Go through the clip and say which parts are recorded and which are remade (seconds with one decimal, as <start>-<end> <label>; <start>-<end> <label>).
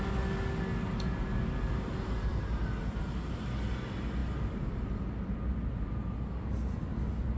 0.0-7.4 recorded